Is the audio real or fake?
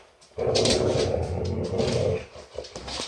real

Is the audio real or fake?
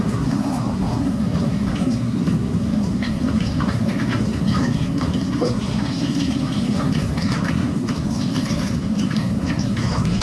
fake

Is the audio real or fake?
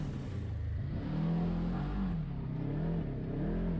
real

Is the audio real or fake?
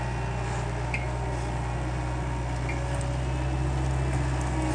real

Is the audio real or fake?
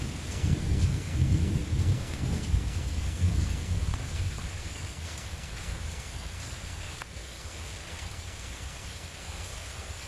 fake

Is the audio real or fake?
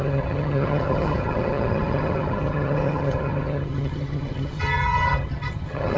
fake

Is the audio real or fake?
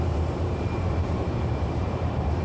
fake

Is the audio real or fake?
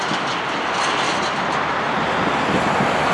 real